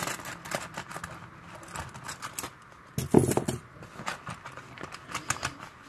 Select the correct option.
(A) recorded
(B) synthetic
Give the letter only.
A